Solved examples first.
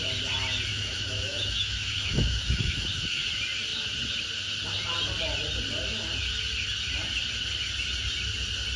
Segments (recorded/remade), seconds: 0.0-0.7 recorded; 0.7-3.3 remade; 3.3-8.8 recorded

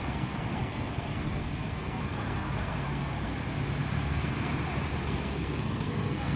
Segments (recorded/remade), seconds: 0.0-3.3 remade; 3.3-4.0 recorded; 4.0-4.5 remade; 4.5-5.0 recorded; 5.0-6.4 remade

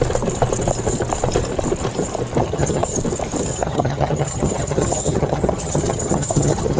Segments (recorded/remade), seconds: 0.0-2.4 recorded; 2.4-3.0 remade; 3.0-3.5 recorded; 3.5-6.8 remade

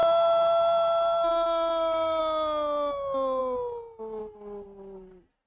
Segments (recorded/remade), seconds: 0.0-2.2 remade; 2.2-5.5 recorded